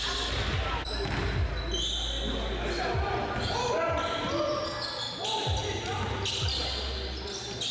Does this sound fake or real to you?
real